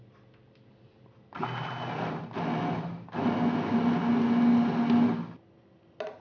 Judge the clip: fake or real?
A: real